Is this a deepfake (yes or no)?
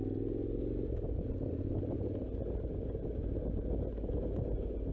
no